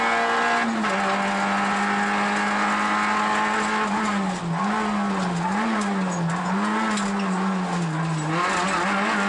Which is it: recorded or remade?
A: recorded